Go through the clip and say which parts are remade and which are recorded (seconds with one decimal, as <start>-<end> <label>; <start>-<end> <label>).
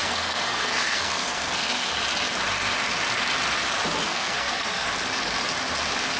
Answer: 0.0-1.9 remade; 1.9-4.0 recorded; 4.0-4.9 remade; 4.9-6.2 recorded